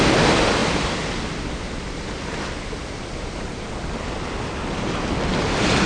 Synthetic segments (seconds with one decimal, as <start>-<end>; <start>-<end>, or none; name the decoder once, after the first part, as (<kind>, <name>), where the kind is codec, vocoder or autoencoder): none